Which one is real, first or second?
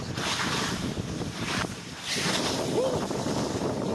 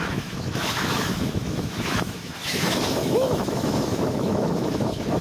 first